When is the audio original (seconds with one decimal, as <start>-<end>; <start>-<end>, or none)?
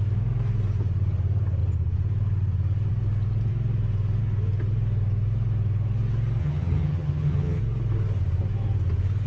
0.0-6.4; 7.6-9.3